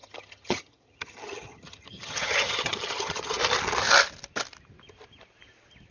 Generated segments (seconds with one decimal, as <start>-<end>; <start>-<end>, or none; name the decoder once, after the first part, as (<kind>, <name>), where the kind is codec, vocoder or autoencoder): 0.0-3.4 (vocoder, HiFi-GAN)